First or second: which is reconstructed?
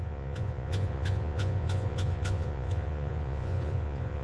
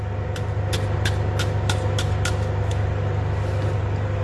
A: first